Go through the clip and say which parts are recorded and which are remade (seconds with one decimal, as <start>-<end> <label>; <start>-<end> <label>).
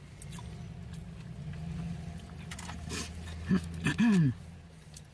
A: 0.0-5.1 recorded